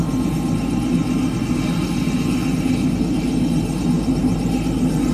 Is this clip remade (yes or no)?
no